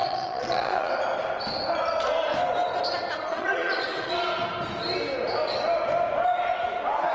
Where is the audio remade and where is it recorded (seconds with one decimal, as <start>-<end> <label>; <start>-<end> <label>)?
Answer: 0.0-0.9 remade; 0.9-3.3 recorded; 3.3-4.1 remade; 4.1-7.1 recorded